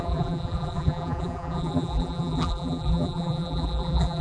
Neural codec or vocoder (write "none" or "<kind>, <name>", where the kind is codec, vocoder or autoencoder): vocoder, BigVGAN v2